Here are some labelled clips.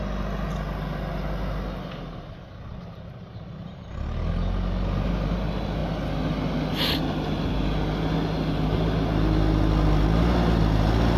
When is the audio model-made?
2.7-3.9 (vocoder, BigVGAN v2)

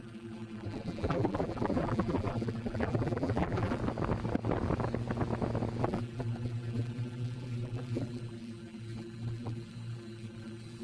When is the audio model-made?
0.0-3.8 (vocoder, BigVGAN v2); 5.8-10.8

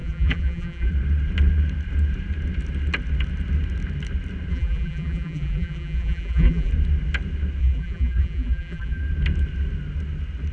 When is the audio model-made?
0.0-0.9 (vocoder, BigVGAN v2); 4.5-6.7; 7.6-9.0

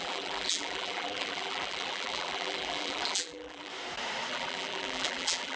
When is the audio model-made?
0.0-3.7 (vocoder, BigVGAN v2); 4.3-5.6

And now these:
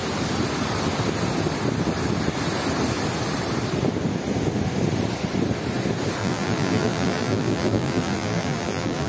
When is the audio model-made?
6.2-9.1 (vocoder, BigVGAN v2)

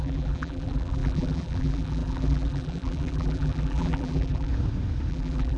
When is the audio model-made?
0.0-4.5 (vocoder, BigVGAN v2); 5.1-5.6